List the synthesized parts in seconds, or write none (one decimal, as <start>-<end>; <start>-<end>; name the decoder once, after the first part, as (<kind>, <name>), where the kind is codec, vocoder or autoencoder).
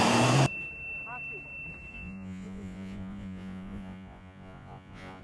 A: 1.9-5.2 (vocoder, Vocos)